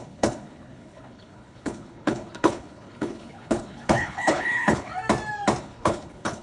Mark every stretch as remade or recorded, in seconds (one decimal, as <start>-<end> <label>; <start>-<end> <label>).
0.0-4.9 remade; 4.9-5.6 recorded; 5.6-6.4 remade

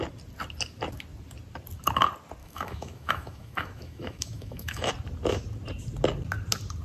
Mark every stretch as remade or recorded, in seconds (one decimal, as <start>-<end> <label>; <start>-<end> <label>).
0.0-2.4 recorded; 2.4-4.9 remade; 4.9-6.8 recorded

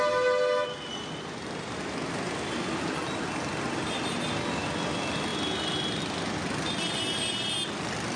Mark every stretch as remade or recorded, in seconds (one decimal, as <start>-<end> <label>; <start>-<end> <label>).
0.0-8.2 recorded

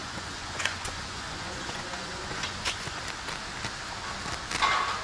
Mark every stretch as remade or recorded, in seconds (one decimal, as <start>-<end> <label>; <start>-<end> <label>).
0.0-3.0 remade; 3.0-5.0 recorded

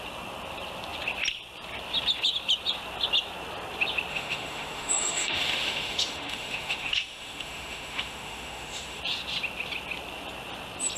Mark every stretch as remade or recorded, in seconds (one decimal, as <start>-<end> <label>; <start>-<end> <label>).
0.0-4.1 recorded; 4.1-9.0 remade; 9.0-11.0 recorded

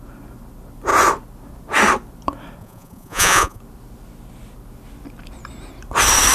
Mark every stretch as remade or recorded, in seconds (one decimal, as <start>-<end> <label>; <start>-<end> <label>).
0.0-2.6 recorded; 2.6-3.6 remade; 3.6-6.3 recorded